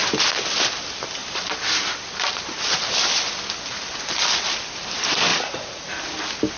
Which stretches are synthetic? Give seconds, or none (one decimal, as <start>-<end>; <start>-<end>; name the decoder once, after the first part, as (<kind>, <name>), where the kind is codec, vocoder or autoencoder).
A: 5.3-5.9 (vocoder, Vocos)